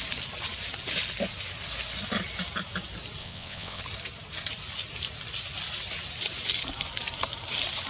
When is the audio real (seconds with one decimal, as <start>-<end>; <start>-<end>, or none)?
0.0-3.2; 3.8-7.9